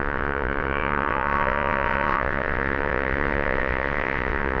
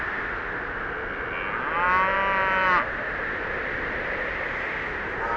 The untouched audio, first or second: second